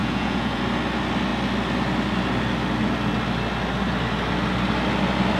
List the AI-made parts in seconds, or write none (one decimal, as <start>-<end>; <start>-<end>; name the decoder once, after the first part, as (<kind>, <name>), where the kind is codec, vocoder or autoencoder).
0.0-0.6 (vocoder, Vocos)